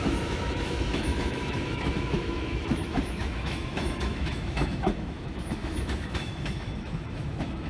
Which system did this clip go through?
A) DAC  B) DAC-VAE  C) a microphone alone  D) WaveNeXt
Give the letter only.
B